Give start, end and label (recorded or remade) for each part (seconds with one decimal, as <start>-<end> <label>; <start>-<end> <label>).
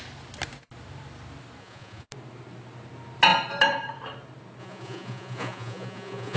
0.0-1.6 recorded; 1.6-2.1 remade; 2.1-4.6 recorded; 4.6-6.4 remade